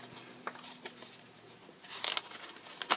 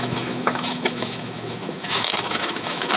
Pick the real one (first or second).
first